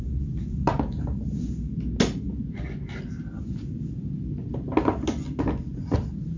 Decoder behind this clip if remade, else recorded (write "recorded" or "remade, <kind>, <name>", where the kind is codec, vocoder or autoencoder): recorded